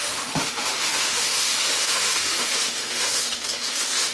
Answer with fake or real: fake